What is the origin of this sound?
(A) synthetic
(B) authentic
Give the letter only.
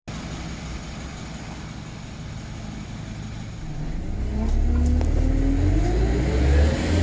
B